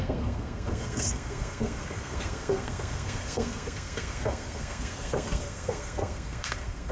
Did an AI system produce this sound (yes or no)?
yes